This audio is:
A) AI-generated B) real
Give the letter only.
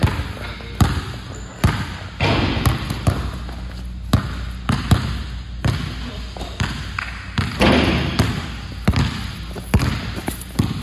B